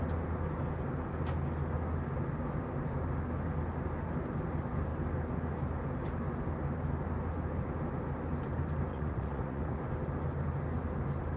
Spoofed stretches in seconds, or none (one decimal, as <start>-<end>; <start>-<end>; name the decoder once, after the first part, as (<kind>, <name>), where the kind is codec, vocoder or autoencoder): 8.9-9.8 (vocoder, Vocos)